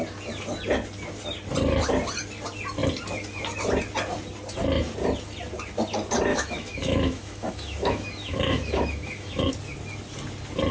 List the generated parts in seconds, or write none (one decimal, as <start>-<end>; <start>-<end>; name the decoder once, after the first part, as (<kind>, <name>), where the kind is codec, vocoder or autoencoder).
6.3-9.5 (autoencoder, DAC-VAE)